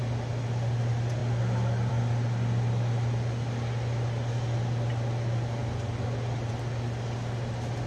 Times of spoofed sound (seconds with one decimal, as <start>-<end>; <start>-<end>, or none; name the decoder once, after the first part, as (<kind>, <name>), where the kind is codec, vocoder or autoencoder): none

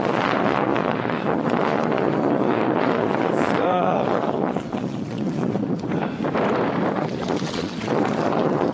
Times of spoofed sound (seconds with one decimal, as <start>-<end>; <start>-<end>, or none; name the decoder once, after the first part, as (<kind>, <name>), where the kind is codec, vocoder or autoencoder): 0.0-5.9 (vocoder, Vocos); 6.9-8.7

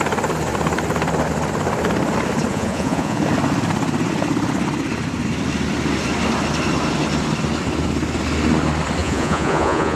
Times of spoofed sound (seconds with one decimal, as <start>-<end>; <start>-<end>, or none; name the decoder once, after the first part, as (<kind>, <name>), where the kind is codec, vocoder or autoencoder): 2.5-3.2 (vocoder, Vocos); 9.0-10.0

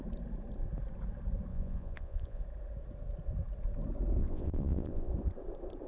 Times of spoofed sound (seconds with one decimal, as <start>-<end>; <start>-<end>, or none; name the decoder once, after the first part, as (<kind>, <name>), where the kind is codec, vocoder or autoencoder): 1.5-2.4 (vocoder, Vocos); 4.2-5.1